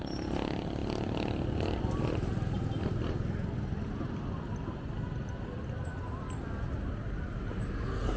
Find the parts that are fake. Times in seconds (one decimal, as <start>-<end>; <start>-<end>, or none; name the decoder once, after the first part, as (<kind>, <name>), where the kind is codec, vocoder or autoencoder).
none